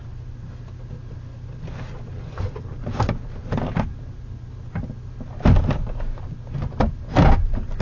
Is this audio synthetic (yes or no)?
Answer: no